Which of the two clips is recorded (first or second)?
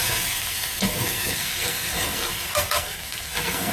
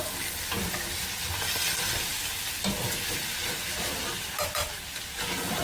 second